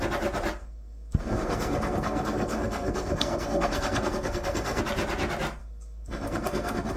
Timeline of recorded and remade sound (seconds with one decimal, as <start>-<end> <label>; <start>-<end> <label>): 0.0-0.6 recorded; 0.6-4.8 remade; 4.8-5.6 recorded; 5.6-7.0 remade